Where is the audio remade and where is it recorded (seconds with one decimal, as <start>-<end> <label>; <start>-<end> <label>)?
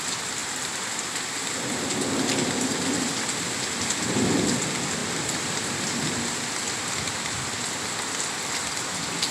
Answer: 0.0-9.3 recorded